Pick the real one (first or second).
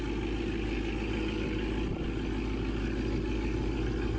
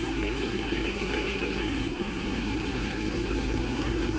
first